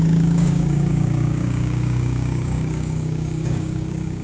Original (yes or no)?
no